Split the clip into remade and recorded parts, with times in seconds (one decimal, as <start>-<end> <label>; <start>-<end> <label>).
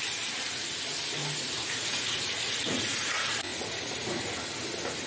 0.0-1.2 recorded; 1.2-4.3 remade; 4.3-5.1 recorded